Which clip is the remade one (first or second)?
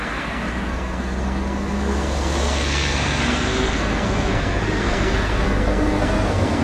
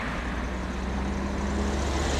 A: first